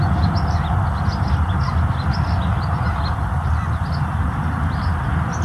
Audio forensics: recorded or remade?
recorded